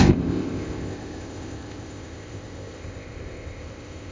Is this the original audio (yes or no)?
no